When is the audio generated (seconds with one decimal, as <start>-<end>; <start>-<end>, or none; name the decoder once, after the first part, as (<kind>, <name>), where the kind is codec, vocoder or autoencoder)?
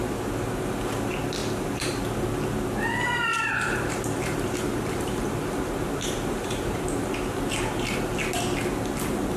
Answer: 1.4-2.0 (vocoder, BigVGAN v2); 3.3-7.1